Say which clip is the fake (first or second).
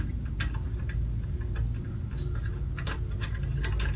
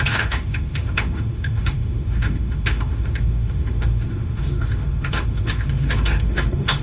second